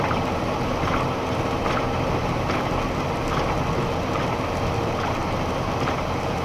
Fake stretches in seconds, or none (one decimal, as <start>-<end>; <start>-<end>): none